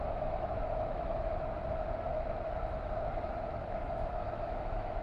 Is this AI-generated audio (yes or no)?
yes